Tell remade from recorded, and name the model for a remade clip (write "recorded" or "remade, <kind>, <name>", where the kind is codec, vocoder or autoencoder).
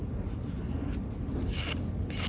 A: recorded